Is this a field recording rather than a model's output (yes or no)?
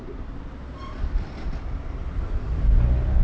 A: yes